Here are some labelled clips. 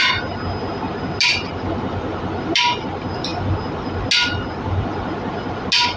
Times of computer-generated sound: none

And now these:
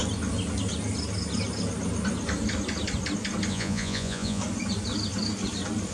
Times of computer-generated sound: 3.5-4.4 (vocoder, Vocos)

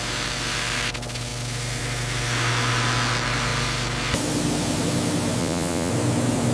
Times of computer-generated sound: 5.4-5.9 (vocoder, Vocos)

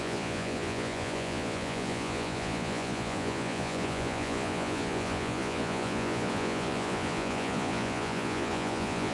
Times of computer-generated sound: 0.0-9.1 (vocoder, Vocos)

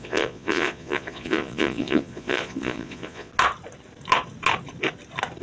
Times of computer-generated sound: 0.0-3.3 (vocoder, Vocos)

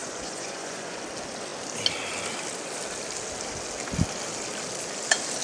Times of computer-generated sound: 0.0-1.0 (vocoder, Vocos)

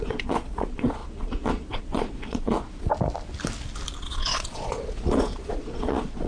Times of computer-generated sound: 0.0-2.9 (vocoder, Vocos); 4.0-6.3

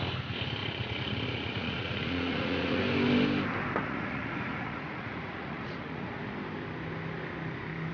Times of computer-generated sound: 0.6-2.8 (vocoder, Vocos); 3.8-6.2